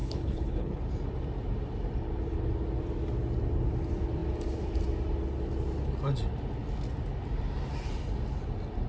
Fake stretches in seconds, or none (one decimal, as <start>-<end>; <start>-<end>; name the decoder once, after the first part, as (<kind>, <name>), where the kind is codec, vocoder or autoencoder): 0.0-0.8 (codec, HILCodec)